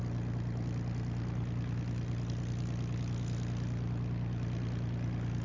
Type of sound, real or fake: real